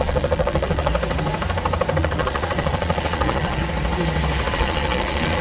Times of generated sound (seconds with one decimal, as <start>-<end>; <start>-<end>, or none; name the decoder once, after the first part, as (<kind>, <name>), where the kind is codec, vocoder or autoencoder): 0.0-0.9 (vocoder, Vocos); 2.0-3.6; 4.5-5.4